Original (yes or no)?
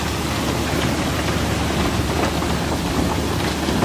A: yes